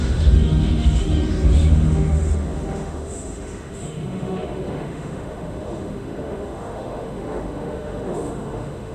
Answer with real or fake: fake